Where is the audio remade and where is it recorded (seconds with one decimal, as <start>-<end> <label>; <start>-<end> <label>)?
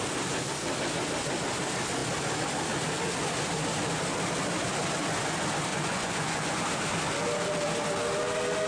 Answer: 0.0-5.7 recorded; 5.7-6.6 remade; 6.6-8.7 recorded